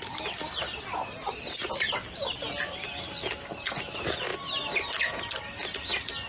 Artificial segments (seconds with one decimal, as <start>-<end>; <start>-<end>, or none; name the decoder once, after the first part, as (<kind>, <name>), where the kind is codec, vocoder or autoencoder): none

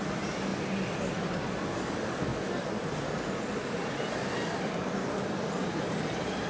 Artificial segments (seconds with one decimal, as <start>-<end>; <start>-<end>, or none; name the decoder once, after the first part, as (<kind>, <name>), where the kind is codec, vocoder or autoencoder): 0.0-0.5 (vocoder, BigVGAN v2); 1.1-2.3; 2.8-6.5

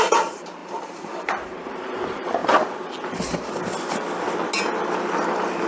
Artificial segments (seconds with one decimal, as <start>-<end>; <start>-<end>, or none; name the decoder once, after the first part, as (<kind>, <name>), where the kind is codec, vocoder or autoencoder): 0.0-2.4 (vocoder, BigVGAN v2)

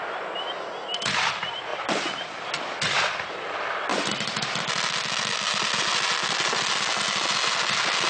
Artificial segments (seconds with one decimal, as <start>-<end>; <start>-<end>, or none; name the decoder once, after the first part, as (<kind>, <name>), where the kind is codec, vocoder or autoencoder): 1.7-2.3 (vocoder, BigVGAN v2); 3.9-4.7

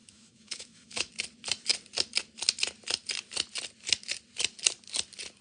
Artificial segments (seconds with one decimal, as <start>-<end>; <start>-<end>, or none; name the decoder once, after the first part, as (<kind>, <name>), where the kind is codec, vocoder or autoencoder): 0.0-1.1 (autoencoder, DAC-VAE)

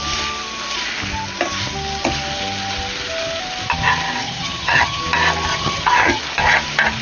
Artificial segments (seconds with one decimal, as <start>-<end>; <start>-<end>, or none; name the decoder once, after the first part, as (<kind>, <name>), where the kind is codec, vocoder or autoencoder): 4.2-5.0 (vocoder, HiFi-GAN); 5.5-6.2

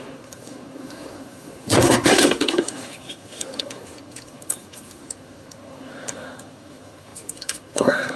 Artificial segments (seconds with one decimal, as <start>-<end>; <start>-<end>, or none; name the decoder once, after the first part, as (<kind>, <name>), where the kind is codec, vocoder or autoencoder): 0.0-8.2 (codec, SNAC)

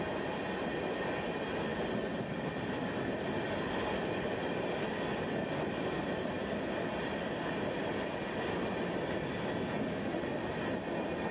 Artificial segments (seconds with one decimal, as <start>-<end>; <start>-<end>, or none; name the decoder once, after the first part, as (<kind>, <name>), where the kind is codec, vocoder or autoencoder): none